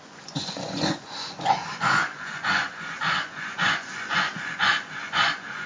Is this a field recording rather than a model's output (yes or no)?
no